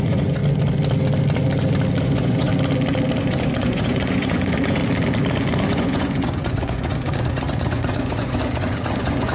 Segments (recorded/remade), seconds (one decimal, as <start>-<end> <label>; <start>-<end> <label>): 0.0-0.4 remade; 0.4-2.0 recorded; 2.0-2.5 remade; 2.5-3.2 recorded; 3.2-4.8 remade; 4.8-5.7 recorded; 5.7-9.3 remade